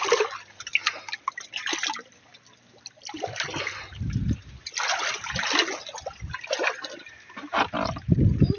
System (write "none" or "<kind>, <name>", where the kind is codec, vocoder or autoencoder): none